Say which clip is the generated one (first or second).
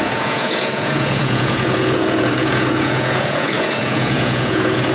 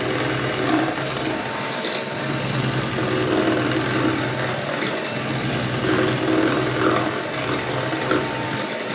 first